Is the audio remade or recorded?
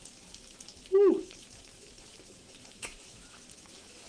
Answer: remade